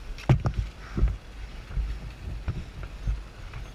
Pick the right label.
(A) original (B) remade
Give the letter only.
A